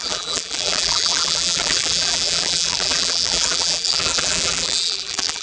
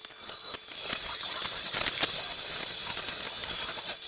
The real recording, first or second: second